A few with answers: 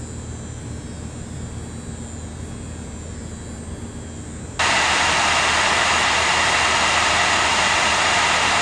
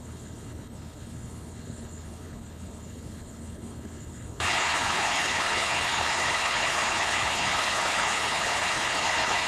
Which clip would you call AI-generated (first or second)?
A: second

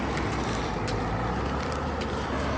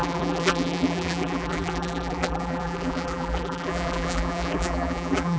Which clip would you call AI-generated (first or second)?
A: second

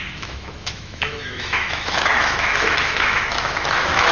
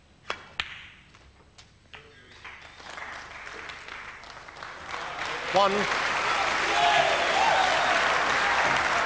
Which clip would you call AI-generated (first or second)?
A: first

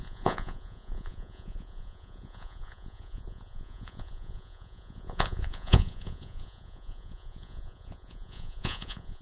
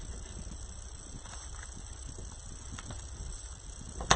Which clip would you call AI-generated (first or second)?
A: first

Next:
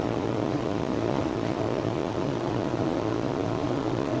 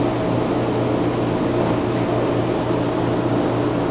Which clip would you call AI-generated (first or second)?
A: first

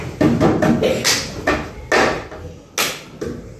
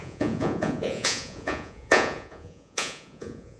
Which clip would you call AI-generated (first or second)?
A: second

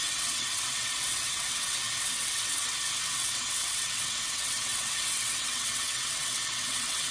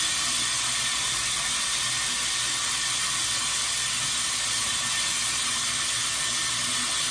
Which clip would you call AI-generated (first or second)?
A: first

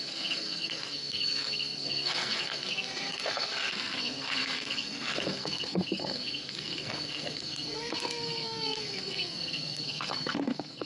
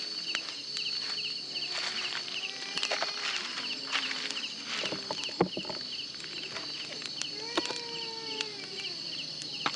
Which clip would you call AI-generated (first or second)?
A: first